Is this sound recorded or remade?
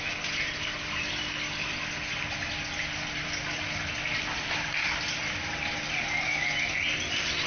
recorded